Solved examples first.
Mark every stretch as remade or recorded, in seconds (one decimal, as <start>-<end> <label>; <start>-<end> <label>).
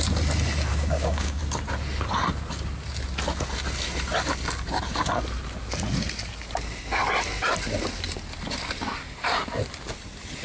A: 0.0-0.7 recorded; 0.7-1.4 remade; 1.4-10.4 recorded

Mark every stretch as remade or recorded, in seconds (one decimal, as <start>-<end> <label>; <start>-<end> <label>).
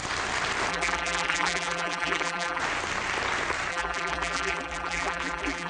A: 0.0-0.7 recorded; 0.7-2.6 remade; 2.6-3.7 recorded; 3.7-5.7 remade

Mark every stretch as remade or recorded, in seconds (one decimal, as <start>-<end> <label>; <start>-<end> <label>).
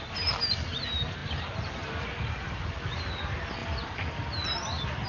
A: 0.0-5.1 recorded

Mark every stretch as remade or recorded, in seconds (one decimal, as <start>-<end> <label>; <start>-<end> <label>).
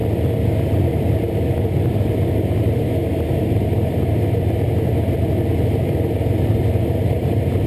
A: 0.0-0.8 recorded; 0.8-7.7 remade